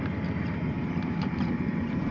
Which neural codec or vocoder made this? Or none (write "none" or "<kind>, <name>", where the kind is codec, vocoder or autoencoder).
vocoder, BigVGAN v2